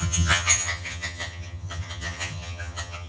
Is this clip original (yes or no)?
no